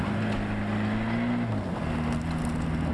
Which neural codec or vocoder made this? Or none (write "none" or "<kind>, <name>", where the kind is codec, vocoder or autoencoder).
none